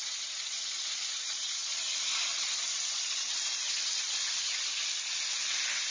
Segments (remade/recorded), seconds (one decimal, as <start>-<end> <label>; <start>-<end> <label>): 0.0-4.8 remade; 4.8-5.9 recorded